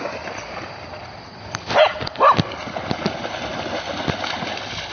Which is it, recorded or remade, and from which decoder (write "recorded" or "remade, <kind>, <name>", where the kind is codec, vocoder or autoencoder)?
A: recorded